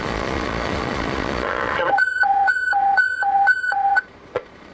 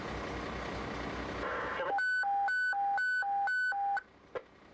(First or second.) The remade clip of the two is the first